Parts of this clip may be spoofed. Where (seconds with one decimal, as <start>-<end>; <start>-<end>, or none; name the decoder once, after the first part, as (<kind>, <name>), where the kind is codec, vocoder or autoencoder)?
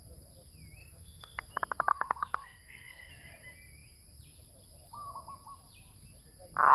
0.8-1.5 (codec, SNAC); 1.9-3.1